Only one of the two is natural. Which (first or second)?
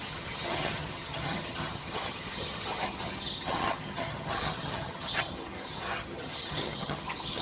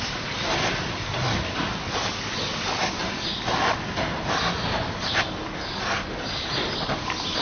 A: second